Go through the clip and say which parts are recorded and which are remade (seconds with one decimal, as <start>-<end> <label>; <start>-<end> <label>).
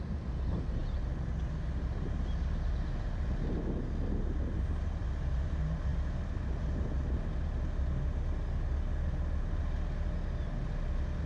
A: 0.0-11.3 recorded